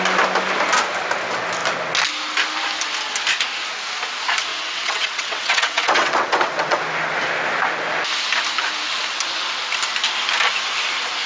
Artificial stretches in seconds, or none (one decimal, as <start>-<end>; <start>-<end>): 4.5-6.8